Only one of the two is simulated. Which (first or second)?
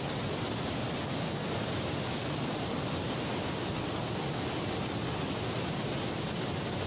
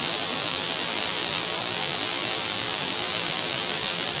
second